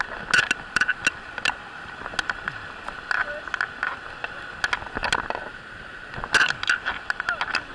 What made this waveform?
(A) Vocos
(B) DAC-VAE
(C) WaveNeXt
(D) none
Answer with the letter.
D